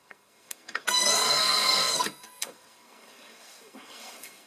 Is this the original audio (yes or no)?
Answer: no